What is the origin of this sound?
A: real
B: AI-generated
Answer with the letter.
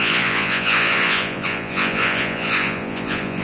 B